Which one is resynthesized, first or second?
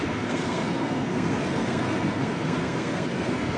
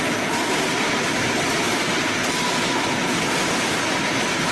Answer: first